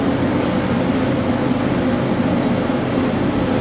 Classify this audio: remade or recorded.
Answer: recorded